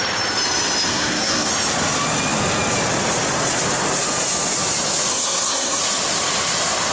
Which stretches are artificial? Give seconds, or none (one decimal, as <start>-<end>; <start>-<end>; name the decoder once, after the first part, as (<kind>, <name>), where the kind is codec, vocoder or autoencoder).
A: 0.9-1.5 (codec, SNAC); 5.1-5.8